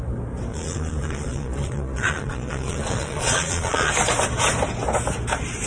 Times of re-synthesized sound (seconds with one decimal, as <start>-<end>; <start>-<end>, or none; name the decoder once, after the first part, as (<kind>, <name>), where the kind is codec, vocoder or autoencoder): 0.5-3.9 (vocoder, Vocos)